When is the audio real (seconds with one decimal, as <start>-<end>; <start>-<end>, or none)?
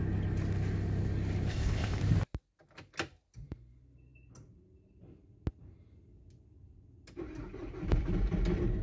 0.0-1.5; 2.0-8.8